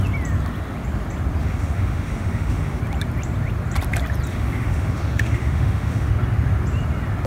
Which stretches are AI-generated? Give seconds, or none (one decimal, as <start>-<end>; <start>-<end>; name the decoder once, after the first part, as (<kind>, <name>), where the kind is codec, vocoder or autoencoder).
1.4-2.8 (autoencoder, DAC-VAE); 4.3-6.1